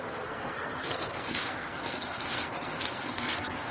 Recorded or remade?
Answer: remade